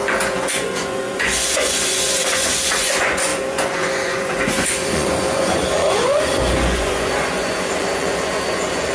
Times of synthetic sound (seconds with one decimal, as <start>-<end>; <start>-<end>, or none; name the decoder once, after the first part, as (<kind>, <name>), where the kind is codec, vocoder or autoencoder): 0.0-8.9 (vocoder, Vocos)

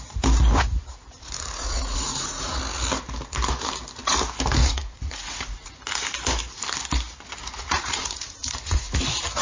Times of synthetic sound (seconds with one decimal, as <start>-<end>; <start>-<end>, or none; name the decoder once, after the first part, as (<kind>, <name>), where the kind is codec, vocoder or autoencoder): 0.9-2.6 (vocoder, Vocos); 4.6-5.7; 7.4-9.0

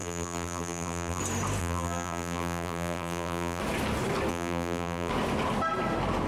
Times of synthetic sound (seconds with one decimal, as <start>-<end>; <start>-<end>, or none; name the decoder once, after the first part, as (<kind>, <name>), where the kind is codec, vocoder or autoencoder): 0.0-1.2 (vocoder, BigVGAN v2); 1.6-3.6; 4.3-5.1

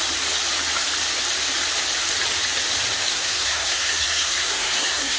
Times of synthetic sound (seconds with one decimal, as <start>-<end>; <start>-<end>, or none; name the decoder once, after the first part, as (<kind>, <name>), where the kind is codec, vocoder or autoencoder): 3.1-5.2 (codec, SNAC)

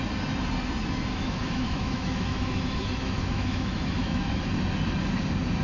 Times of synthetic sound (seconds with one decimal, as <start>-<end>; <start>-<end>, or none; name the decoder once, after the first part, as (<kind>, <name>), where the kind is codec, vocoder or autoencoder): 1.1-4.4 (autoencoder, DAC-VAE)

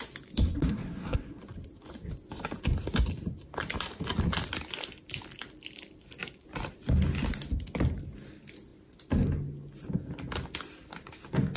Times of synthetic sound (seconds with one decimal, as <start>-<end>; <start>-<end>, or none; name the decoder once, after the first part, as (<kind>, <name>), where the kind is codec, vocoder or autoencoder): 0.4-1.4 (codec, SNAC)

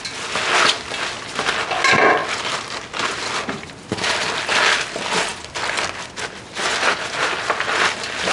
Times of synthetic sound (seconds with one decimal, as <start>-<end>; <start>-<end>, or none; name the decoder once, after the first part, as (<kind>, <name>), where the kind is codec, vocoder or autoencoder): none

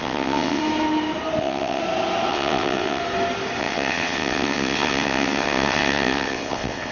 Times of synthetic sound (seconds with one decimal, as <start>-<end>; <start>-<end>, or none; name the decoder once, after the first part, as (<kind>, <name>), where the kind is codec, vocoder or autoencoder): 0.0-0.6 (vocoder, WaveNeXt); 1.4-1.8; 2.3-3.0; 3.6-6.9